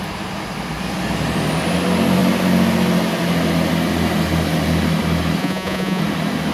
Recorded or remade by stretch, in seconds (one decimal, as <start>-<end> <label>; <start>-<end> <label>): 0.0-5.4 recorded; 5.4-6.0 remade; 6.0-6.5 recorded

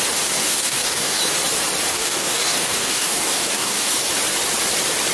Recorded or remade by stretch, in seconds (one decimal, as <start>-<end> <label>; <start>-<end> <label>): 0.0-0.4 recorded; 0.4-1.2 remade; 1.2-1.9 recorded; 1.9-4.1 remade; 4.1-5.1 recorded

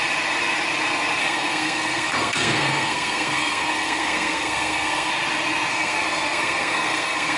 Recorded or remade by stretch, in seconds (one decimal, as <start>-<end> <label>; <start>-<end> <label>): 0.0-1.2 recorded; 1.2-5.1 remade; 5.1-5.7 recorded; 5.7-7.4 remade

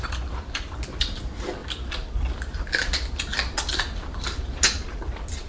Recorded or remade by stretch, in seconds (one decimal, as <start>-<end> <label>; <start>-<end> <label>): 0.0-5.5 recorded